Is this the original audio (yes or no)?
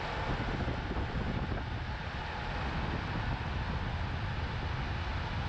yes